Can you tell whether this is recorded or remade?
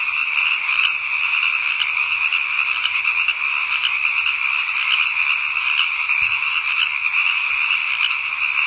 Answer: recorded